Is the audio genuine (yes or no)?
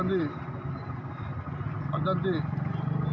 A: yes